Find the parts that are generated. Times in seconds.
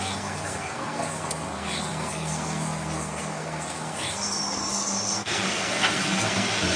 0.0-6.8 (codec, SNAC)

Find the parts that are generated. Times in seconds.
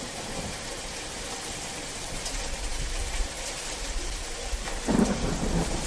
none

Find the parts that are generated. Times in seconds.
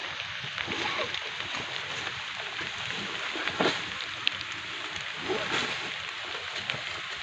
none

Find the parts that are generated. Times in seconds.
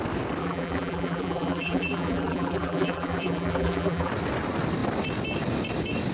0.4-4.1 (vocoder, BigVGAN v2)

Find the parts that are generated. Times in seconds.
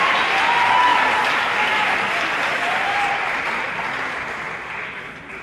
0.9-3.0 (vocoder, BigVGAN v2)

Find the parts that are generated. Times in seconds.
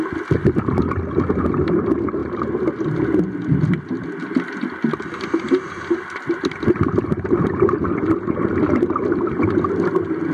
none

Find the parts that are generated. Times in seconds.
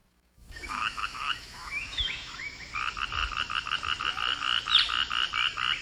0.0-2.7 (autoencoder, DAC-VAE)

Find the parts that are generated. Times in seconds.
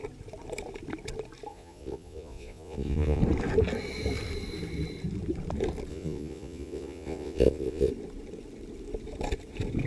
1.5-3.2 (vocoder, Vocos); 5.9-7.9